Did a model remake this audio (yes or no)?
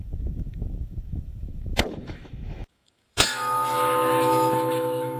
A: yes